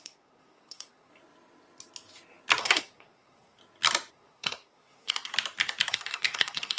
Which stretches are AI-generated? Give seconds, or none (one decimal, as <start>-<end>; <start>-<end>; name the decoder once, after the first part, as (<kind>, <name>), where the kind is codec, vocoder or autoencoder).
0.0-1.1 (codec, SNAC); 2.6-3.6; 4.1-5.3; 5.9-6.8